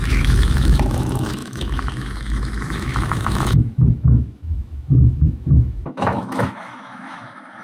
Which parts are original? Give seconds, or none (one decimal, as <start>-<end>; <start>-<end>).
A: none